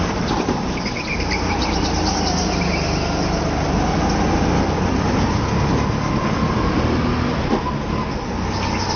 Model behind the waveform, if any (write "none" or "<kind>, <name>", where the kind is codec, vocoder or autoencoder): none